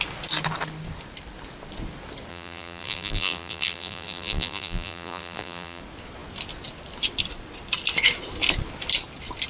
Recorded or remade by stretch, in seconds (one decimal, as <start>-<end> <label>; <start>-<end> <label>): 0.0-2.3 recorded; 2.3-5.8 remade; 5.8-9.5 recorded